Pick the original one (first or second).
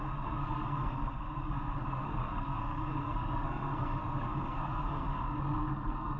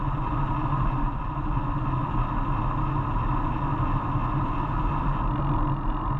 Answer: second